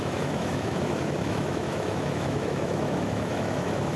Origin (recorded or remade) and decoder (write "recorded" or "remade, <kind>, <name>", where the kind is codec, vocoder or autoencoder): remade, autoencoder, DAC-VAE